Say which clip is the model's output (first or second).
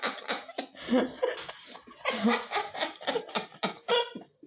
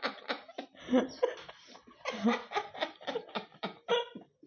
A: second